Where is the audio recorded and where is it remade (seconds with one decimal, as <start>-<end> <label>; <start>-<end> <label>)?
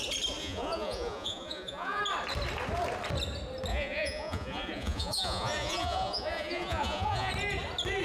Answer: 0.0-0.4 recorded; 0.4-2.0 remade; 2.0-3.7 recorded; 3.7-7.3 remade; 7.3-8.0 recorded